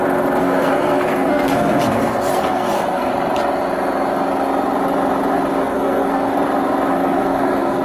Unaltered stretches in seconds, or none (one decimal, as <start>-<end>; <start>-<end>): 0.0-0.4; 3.1-5.6; 6.3-6.9